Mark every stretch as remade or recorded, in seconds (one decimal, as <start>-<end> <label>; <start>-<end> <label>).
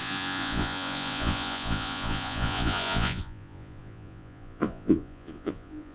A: 0.0-5.9 remade